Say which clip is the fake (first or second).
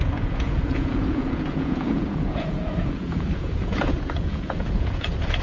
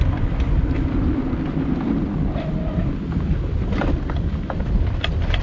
first